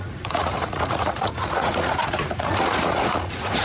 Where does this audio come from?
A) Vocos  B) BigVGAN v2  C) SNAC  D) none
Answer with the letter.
A